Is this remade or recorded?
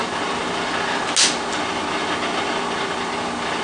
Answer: recorded